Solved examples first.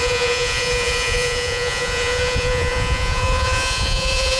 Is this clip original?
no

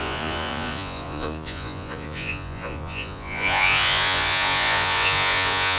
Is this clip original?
no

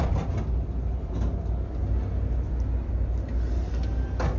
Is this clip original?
yes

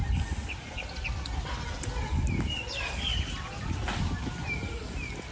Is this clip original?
yes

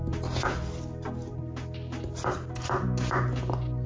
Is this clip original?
yes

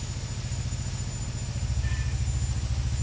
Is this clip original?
yes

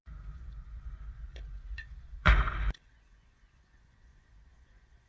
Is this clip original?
no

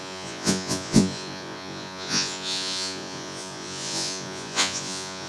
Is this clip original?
no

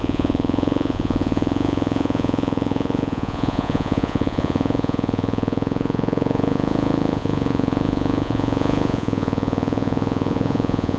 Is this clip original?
no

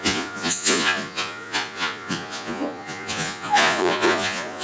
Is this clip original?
no